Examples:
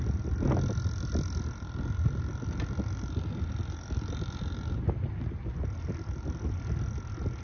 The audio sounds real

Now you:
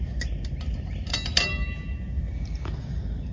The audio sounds real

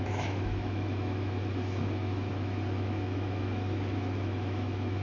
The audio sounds fake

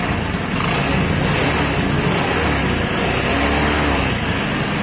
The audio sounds real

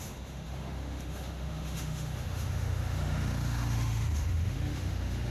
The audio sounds fake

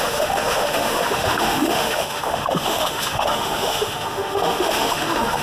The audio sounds fake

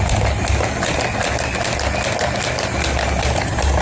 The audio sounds real